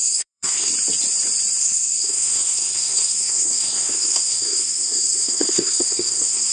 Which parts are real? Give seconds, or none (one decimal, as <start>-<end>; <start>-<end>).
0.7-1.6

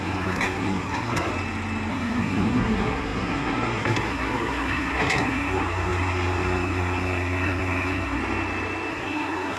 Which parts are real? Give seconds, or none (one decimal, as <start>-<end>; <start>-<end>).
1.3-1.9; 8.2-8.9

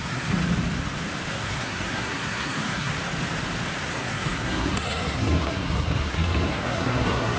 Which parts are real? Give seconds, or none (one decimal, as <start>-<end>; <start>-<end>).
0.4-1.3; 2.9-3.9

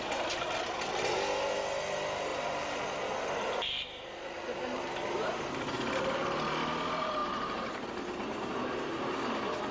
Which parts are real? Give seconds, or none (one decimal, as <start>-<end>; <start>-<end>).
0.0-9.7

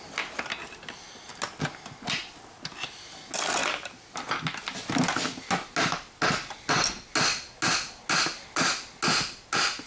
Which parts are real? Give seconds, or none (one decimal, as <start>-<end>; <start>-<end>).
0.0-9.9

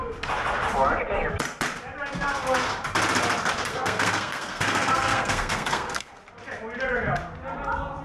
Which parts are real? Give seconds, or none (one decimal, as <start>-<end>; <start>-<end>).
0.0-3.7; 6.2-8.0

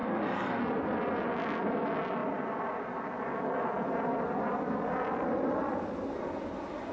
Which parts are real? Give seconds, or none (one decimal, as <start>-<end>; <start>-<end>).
0.6-6.9